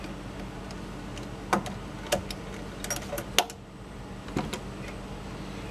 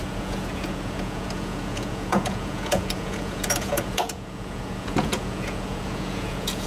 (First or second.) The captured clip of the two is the first